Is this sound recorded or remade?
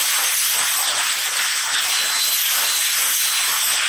recorded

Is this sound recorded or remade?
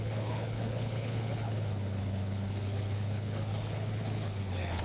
remade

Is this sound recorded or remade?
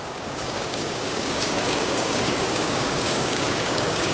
remade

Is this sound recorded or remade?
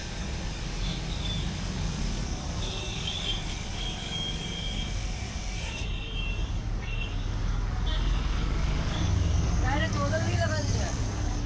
remade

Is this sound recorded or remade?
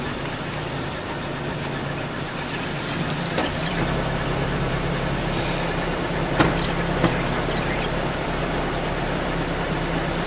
remade